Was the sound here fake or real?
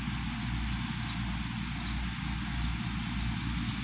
real